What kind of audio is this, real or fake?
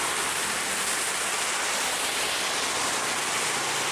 real